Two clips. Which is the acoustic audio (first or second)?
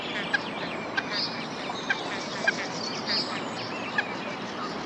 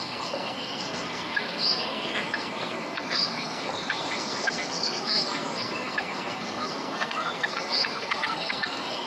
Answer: first